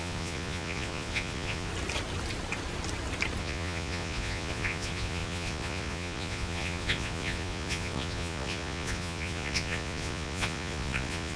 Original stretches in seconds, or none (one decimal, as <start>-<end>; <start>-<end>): 1.7-3.4